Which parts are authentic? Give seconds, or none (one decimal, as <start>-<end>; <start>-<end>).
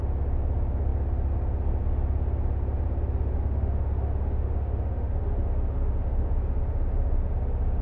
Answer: 0.0-3.3; 7.3-7.8